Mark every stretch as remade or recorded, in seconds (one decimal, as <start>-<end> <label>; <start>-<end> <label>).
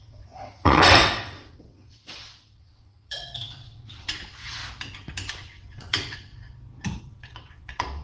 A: 0.0-4.6 remade; 4.6-5.3 recorded; 5.3-6.3 remade; 6.3-7.0 recorded; 7.0-8.0 remade